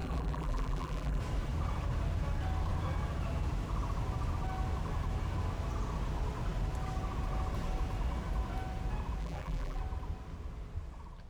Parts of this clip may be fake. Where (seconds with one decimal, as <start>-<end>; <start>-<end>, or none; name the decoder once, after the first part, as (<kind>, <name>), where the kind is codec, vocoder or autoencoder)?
0.0-1.2 (vocoder, BigVGAN v2); 9.2-9.8